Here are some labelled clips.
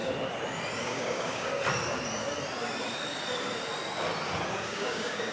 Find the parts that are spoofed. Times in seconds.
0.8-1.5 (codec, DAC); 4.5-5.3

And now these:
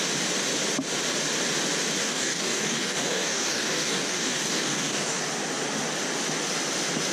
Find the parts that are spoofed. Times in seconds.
2.0-5.2 (codec, DAC)

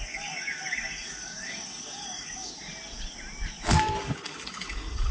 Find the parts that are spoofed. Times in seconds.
0.0-2.5 (codec, DAC); 4.0-5.1

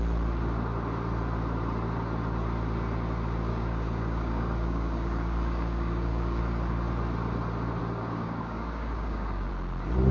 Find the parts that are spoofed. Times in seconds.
3.5-6.4 (codec, DAC); 7.8-9.5

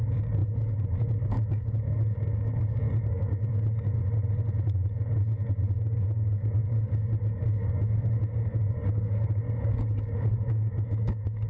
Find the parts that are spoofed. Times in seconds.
0.0-4.0 (codec, DAC); 5.2-11.5